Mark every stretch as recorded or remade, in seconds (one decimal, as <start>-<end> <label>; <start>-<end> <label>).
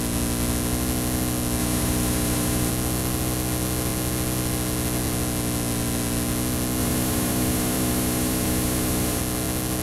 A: 0.0-1.6 recorded; 1.6-2.7 remade; 2.7-6.8 recorded; 6.8-9.2 remade; 9.2-9.8 recorded